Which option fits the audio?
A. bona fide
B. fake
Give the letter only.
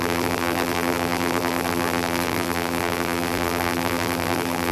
B